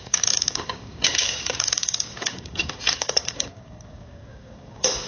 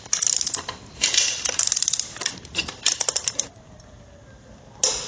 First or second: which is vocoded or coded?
first